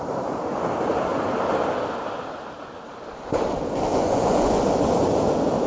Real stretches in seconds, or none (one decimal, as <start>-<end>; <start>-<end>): 0.0-3.9; 4.6-5.7